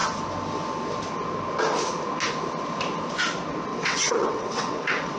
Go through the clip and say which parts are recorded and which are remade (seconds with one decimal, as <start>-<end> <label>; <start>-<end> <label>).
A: 0.0-3.7 recorded; 3.7-5.2 remade

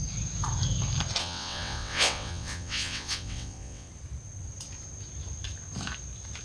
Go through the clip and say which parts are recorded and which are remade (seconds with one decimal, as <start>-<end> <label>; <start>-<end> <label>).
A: 0.0-1.2 recorded; 1.2-3.9 remade; 3.9-6.4 recorded

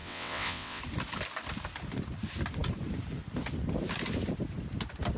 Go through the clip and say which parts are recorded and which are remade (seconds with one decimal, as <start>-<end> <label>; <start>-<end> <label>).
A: 0.0-0.8 remade; 0.8-5.2 recorded

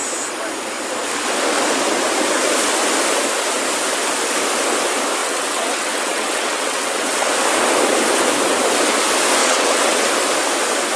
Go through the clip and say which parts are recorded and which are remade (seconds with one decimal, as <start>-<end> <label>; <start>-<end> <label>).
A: 0.0-5.2 recorded; 5.2-7.3 remade; 7.3-9.4 recorded; 9.4-10.0 remade; 10.0-11.0 recorded

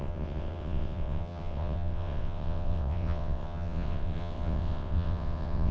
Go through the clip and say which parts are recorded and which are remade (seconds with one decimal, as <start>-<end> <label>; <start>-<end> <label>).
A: 0.0-5.7 remade